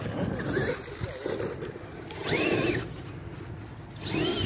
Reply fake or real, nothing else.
real